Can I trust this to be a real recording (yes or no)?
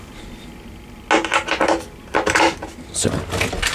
yes